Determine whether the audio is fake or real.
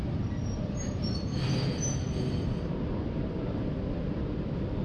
fake